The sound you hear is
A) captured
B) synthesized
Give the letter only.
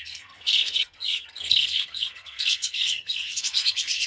B